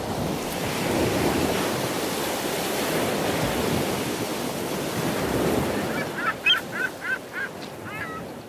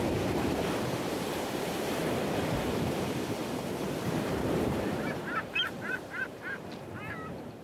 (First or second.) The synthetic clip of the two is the second